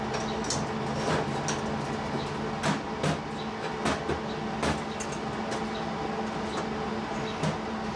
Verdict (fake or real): real